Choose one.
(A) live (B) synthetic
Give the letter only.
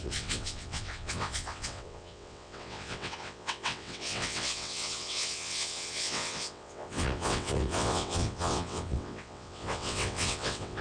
B